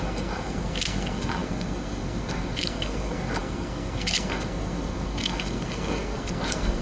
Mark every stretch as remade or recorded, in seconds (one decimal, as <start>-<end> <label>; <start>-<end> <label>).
0.0-6.8 remade